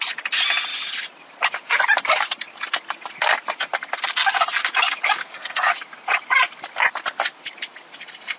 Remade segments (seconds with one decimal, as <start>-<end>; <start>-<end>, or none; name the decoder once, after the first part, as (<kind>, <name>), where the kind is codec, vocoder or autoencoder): 5.2-5.7 (codec, SNAC)